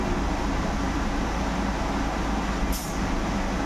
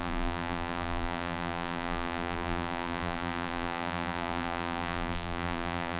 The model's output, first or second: second